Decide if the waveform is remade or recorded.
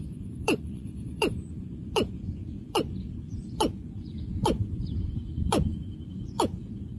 remade